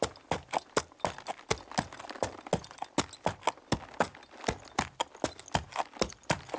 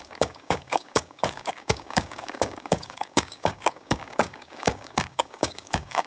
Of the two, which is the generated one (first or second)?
second